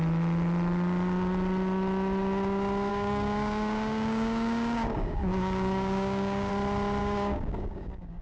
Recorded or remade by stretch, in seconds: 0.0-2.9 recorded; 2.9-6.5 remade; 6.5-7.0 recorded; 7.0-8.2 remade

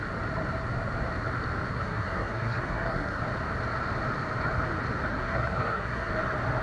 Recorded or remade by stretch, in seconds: 0.0-1.7 recorded; 1.7-3.2 remade; 3.2-5.1 recorded; 5.1-6.1 remade; 6.1-6.6 recorded

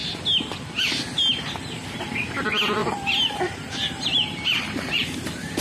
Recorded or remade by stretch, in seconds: 0.0-2.8 recorded; 2.8-5.6 remade

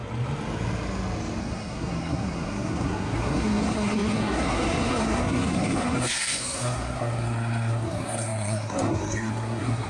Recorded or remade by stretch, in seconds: 0.0-1.4 recorded; 1.4-9.9 remade